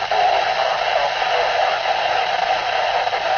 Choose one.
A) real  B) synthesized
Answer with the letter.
A